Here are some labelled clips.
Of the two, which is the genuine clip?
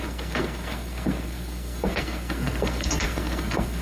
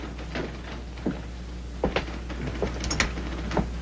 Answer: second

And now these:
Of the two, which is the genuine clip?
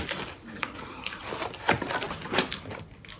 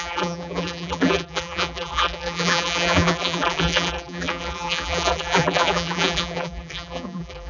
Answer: first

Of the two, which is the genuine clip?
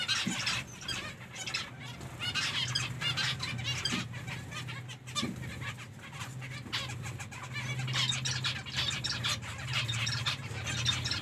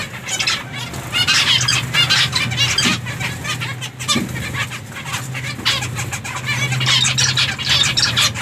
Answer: second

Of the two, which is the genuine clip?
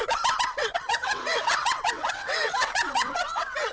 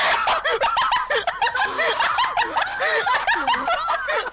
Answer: second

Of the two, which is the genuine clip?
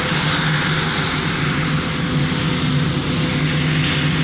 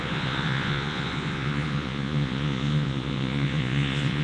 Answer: first